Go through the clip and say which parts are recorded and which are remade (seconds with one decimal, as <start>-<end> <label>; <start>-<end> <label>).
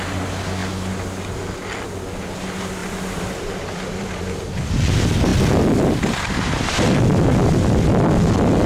0.0-2.8 recorded; 2.8-4.2 remade; 4.2-5.3 recorded; 5.3-7.9 remade; 7.9-8.7 recorded